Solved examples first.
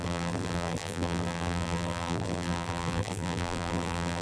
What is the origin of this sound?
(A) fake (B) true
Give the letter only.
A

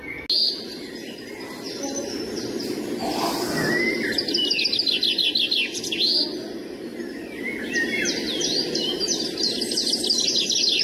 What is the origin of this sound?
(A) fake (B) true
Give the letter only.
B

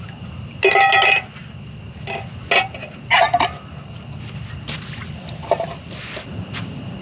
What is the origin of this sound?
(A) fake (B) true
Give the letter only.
B